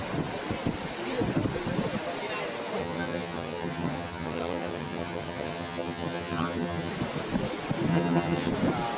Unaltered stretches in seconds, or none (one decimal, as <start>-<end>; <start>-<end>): 0.0-2.8; 6.9-7.9; 8.5-9.0